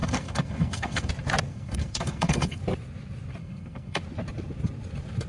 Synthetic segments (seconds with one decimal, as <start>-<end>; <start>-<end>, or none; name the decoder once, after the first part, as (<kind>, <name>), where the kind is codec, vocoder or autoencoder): 0.0-1.1 (codec, SNAC); 1.5-2.6; 3.4-4.0